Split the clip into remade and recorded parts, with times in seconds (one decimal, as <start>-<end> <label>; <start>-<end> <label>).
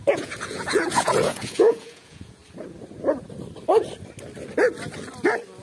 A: 0.0-2.4 remade; 2.4-5.6 recorded